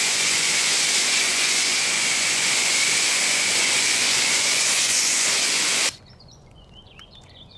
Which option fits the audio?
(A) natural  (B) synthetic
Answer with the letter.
B